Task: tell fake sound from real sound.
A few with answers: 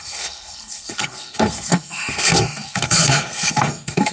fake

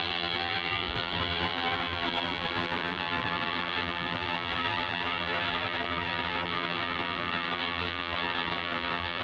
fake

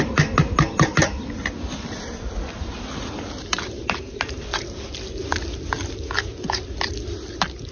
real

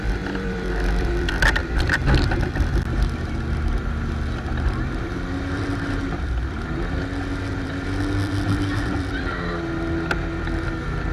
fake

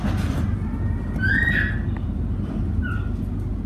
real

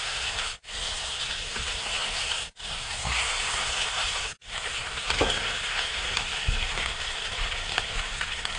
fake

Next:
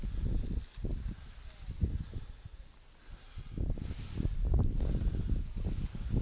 real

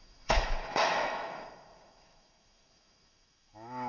fake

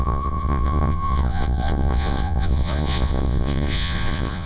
fake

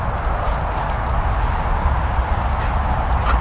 real